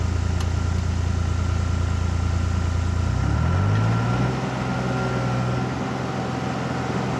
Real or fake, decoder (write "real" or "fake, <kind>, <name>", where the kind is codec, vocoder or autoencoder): real